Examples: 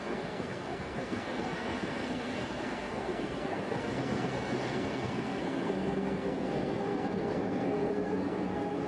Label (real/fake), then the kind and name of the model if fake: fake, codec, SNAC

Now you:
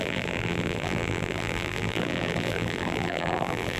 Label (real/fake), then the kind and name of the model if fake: fake, vocoder, BigVGAN v2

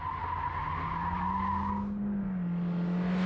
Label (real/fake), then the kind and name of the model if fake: real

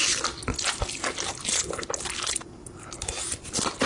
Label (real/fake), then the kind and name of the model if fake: real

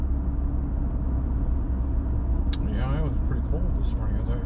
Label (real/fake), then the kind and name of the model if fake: real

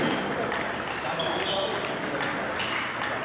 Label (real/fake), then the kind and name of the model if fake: real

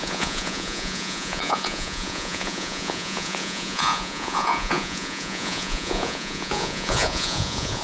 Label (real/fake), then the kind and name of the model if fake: fake, vocoder, Vocos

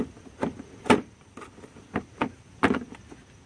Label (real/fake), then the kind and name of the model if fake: real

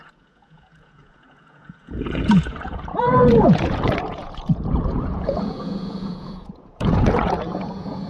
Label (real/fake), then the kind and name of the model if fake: fake, vocoder, Vocos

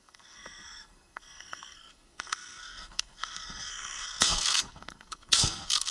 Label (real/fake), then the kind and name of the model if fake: fake, codec, SNAC